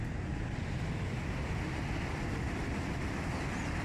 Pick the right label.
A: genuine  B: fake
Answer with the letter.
A